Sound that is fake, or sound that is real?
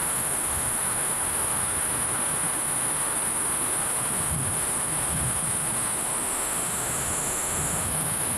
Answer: fake